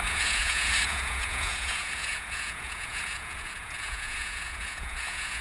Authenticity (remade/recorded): remade